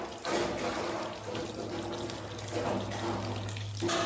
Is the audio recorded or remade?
recorded